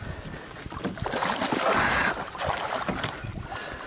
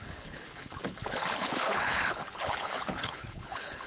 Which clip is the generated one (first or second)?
second